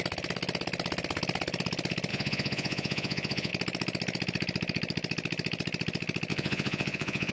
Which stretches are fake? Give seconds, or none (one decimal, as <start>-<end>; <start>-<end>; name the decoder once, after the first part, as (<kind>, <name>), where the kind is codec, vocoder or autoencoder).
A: 2.1-3.5 (vocoder, Vocos); 6.3-7.3

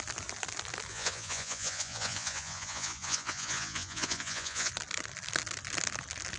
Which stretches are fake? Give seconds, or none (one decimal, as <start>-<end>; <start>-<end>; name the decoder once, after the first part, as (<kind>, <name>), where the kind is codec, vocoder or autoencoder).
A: 0.9-4.7 (vocoder, Vocos)

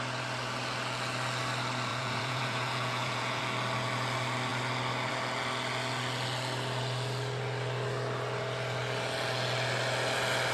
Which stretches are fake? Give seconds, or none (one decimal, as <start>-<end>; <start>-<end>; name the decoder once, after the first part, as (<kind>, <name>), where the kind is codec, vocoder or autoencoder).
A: 1.9-3.4 (vocoder, Vocos)

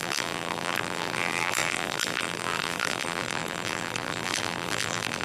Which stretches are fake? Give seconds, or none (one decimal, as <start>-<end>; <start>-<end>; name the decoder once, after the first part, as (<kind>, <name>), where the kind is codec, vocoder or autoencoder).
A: 0.0-5.2 (vocoder, BigVGAN v2)

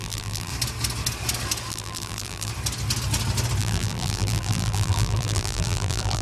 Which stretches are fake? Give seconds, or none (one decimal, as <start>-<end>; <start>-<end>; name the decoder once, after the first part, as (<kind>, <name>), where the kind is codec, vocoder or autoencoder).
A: 0.0-0.5 (vocoder, BigVGAN v2); 1.7-2.5; 3.6-6.2